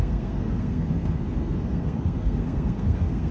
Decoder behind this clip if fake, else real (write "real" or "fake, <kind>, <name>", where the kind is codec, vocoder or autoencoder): fake, codec, SNAC